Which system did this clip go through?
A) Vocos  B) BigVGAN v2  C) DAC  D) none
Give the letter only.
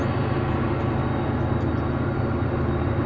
D